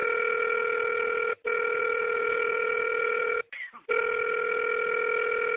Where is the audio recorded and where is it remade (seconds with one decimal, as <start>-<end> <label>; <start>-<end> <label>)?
0.0-1.8 recorded; 1.8-4.0 remade; 4.0-5.6 recorded